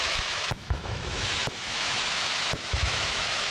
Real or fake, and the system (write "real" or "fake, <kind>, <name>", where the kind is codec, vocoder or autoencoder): fake, autoencoder, DAC-VAE